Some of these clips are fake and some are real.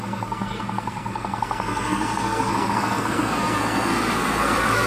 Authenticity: fake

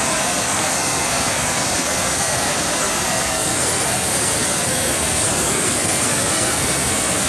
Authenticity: fake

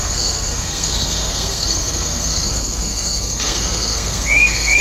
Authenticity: fake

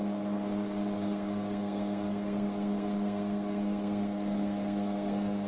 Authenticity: fake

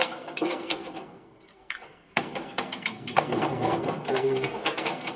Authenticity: fake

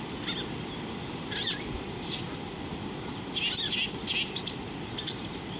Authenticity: real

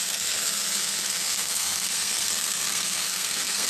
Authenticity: fake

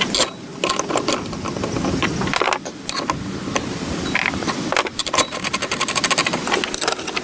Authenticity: real